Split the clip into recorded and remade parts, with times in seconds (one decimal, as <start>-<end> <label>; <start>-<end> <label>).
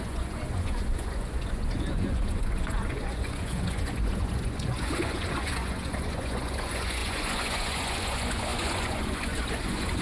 0.0-10.0 remade